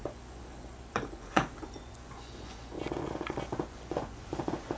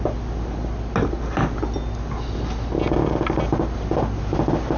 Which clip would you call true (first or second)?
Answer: second